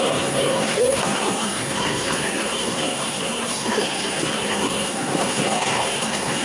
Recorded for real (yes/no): no